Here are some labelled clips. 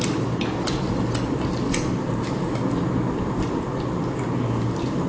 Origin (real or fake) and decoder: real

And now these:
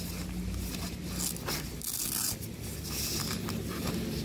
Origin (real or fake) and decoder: real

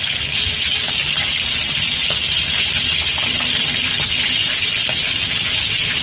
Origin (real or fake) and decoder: real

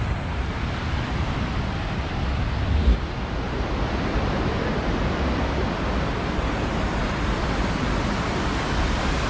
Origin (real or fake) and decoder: real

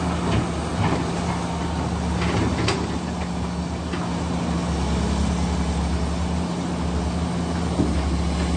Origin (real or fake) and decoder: real